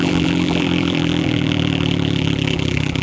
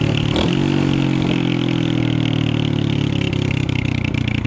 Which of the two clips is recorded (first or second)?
second